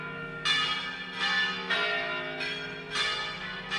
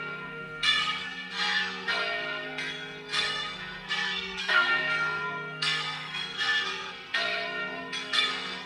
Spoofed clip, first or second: second